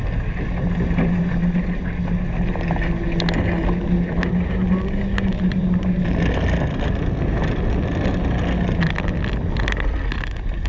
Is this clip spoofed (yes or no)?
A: no